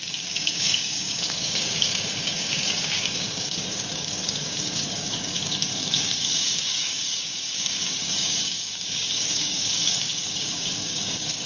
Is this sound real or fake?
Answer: fake